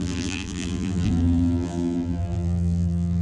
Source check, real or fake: fake